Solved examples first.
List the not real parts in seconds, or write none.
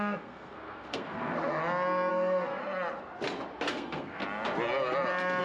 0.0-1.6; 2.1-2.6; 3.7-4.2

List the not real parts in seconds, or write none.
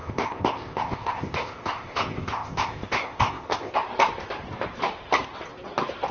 0.0-3.7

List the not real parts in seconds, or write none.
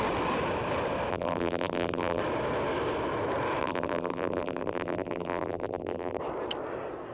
1.1-2.2; 3.6-6.2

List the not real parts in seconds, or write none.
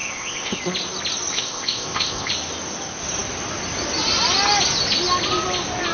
0.0-0.6; 1.3-2.3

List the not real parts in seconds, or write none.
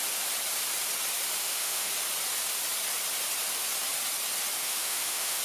1.4-1.9; 4.6-5.4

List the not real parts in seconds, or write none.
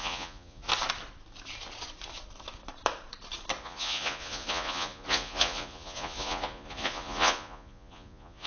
0.0-0.7; 3.6-8.5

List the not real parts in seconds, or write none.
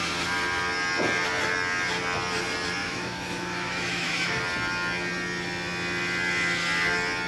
2.8-4.4